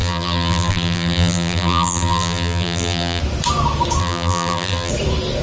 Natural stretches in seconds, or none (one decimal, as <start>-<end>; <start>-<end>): 3.2-4.0; 4.9-5.4